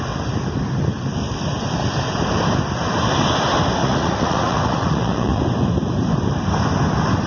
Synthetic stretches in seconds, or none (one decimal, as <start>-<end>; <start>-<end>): 3.8-5.4

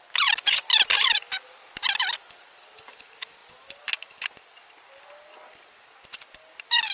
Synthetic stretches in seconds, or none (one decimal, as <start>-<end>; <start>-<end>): none

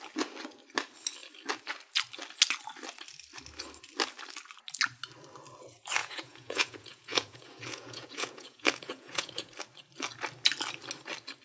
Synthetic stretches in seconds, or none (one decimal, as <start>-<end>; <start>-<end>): 6.0-9.5

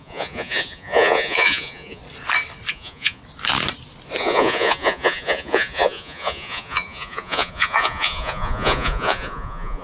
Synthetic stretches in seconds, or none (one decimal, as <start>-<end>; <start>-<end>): 0.0-2.0; 2.7-3.2; 4.2-9.8